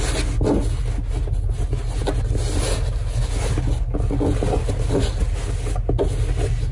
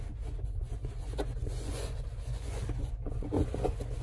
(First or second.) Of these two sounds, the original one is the first